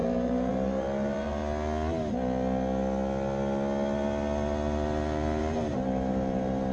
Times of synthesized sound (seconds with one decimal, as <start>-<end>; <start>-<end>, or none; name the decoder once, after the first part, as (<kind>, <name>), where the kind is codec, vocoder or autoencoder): 0.0-1.4 (vocoder, BigVGAN v2); 5.4-6.7